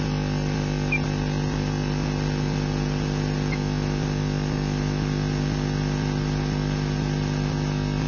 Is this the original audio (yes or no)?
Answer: yes